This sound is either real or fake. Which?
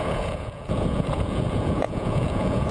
fake